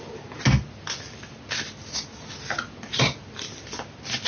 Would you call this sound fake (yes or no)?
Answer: no